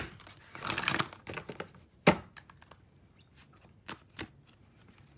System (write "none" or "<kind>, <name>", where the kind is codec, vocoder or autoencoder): none